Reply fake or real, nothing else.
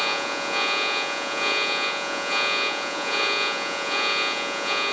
fake